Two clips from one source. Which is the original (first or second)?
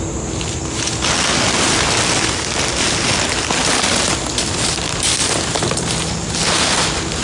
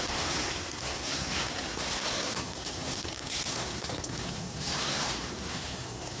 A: first